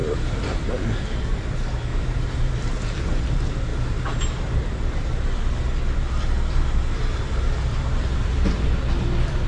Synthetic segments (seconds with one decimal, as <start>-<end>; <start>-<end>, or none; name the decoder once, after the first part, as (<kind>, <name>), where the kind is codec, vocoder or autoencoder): 0.0-0.7 (vocoder, BigVGAN v2); 1.9-2.5; 7.7-8.7